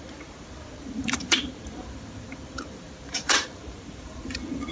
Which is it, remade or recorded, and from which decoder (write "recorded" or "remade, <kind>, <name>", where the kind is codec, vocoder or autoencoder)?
remade, vocoder, BigVGAN v2